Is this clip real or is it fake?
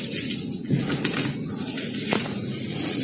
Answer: fake